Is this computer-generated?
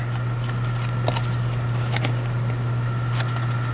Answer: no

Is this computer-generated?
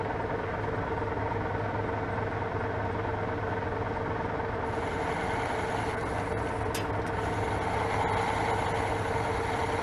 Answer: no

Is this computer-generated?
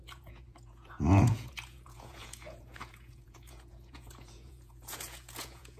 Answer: yes